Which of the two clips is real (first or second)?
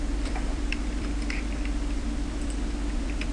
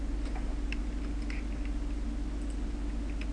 second